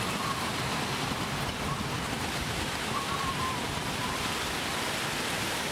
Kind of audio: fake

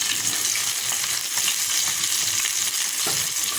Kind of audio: real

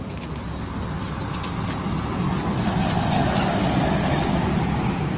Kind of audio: real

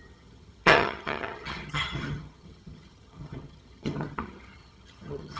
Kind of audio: fake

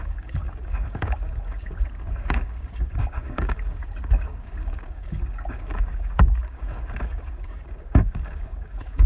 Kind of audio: fake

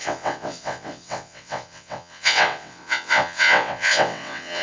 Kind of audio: fake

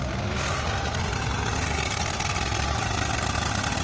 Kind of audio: real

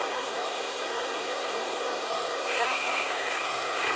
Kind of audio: fake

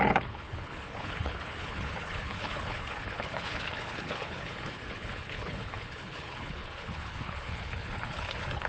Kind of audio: fake